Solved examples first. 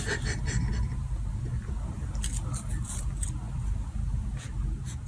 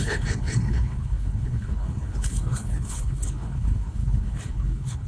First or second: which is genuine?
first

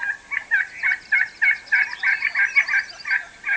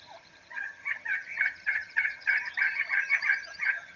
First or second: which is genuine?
first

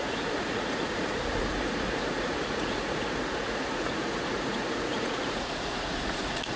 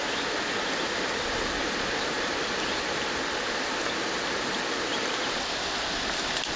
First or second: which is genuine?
second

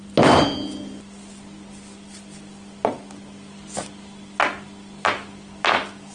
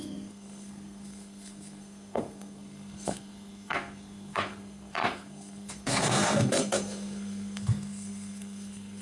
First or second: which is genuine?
first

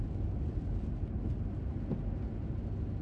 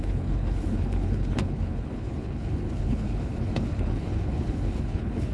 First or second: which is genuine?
first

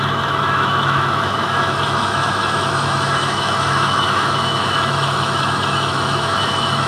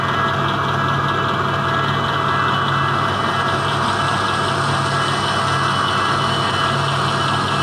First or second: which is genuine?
second